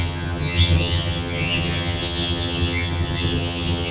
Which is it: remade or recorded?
remade